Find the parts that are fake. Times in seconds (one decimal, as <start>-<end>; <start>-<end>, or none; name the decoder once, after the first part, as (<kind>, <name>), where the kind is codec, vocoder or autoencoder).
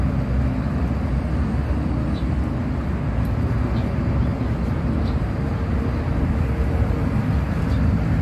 none